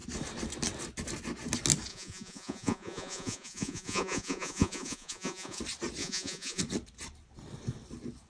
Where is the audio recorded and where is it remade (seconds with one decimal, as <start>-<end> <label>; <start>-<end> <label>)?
0.0-1.9 recorded; 1.9-5.6 remade; 5.6-6.0 recorded; 6.0-6.6 remade; 6.6-8.3 recorded